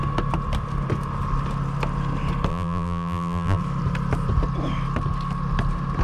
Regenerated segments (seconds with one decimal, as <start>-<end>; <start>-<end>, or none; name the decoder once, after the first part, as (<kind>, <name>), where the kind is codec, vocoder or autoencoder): 2.5-3.6 (vocoder, BigVGAN v2)